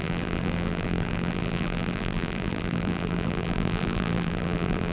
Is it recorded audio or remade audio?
remade